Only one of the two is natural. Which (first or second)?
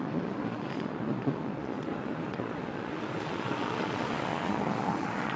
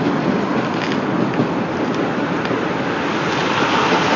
second